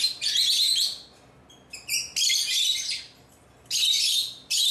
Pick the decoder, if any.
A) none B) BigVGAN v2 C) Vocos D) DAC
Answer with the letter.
A